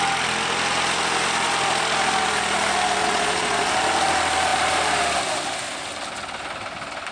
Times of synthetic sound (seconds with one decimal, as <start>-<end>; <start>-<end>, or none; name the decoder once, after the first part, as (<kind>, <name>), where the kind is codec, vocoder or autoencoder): 3.0-3.7 (vocoder, Vocos)